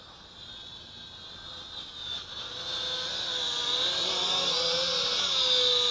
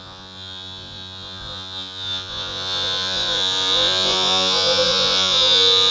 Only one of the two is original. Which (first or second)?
first